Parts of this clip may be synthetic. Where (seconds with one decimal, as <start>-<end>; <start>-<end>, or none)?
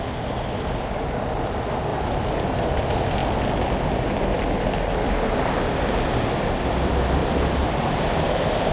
1.9-2.6; 7.2-8.7